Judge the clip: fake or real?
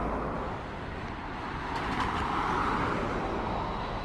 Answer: real